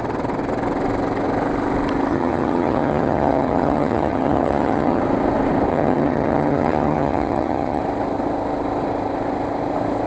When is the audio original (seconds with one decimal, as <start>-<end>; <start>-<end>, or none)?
0.0-2.1; 5.0-5.7; 7.8-10.1